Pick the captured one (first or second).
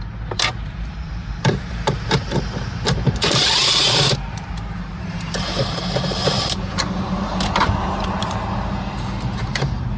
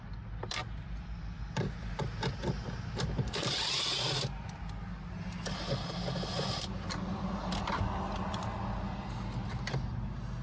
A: second